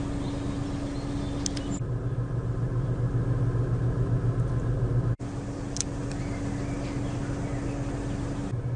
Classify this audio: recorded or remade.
recorded